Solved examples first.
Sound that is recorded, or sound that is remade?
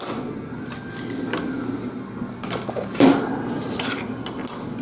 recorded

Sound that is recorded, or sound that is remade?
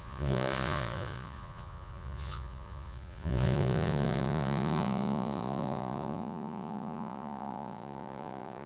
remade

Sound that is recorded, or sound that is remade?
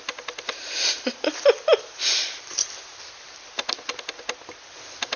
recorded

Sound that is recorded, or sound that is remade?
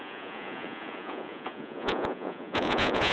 remade